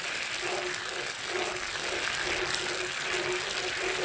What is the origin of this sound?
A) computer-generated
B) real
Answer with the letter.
B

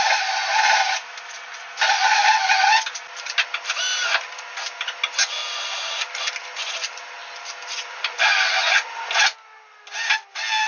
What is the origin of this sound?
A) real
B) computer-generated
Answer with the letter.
A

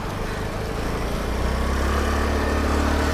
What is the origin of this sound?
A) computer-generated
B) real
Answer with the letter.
B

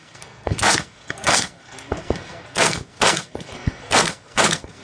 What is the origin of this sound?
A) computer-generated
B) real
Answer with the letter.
A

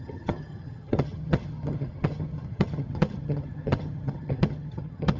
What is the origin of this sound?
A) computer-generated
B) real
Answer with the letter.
A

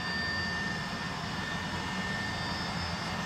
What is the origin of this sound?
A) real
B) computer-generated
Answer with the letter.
A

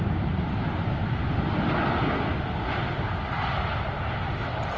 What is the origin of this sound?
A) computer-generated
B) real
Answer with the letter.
B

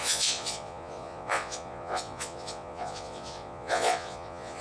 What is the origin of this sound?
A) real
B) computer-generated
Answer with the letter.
B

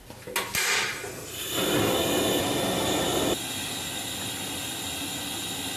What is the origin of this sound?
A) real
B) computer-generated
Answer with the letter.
A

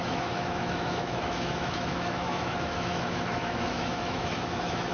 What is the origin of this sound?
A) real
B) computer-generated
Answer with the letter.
B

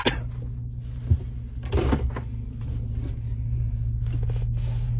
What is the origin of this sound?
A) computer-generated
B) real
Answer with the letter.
B